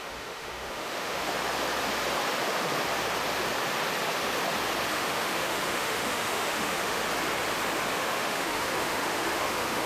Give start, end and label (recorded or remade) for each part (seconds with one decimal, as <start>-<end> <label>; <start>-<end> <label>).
0.0-1.4 remade; 1.4-4.9 recorded; 4.9-7.0 remade; 7.0-7.9 recorded; 7.9-9.9 remade